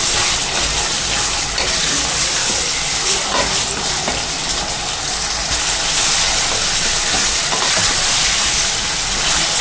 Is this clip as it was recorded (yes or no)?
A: yes